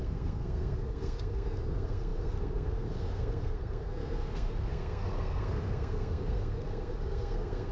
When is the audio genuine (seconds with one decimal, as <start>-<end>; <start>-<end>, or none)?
none